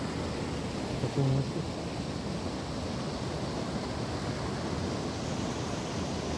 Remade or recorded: recorded